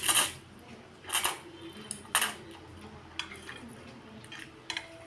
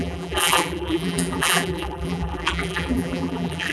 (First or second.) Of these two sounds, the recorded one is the first